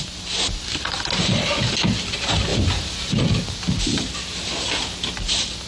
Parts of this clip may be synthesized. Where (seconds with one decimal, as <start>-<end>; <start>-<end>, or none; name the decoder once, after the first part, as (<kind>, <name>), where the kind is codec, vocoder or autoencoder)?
2.5-3.2 (vocoder, BigVGAN v2)